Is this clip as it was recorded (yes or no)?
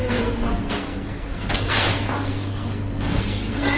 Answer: no